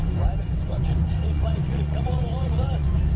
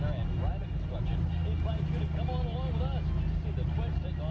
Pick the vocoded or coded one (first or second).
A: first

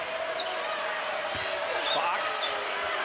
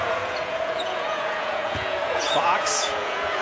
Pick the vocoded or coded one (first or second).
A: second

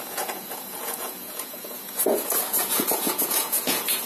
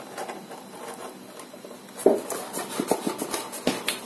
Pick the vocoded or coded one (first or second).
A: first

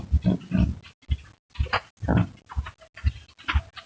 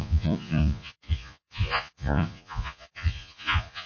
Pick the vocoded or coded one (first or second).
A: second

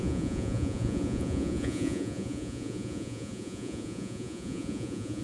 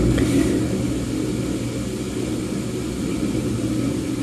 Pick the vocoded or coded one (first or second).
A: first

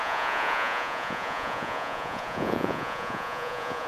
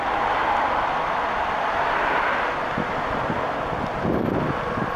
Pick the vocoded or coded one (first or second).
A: first